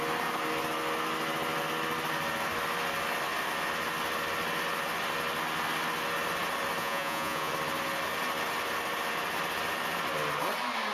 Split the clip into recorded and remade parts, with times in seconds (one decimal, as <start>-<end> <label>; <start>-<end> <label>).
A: 0.0-6.8 recorded; 6.8-7.5 remade; 7.5-10.9 recorded